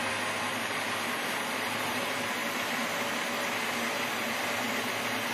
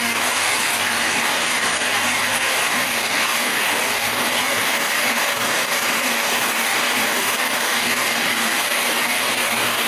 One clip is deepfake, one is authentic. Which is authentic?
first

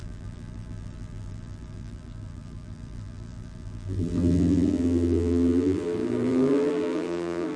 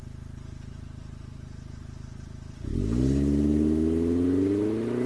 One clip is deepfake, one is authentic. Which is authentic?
second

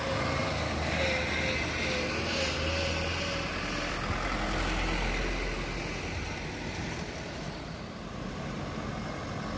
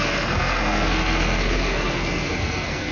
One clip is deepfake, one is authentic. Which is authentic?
first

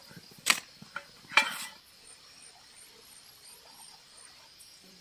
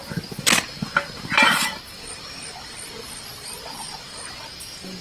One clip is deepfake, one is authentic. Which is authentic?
second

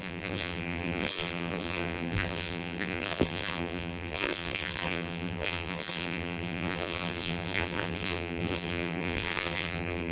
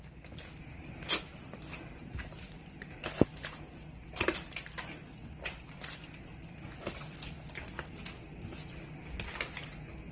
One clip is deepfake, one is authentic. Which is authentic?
second